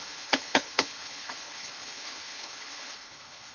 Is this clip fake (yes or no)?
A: yes